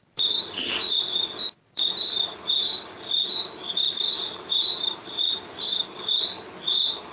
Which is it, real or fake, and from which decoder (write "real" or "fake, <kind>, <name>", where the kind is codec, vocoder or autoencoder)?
real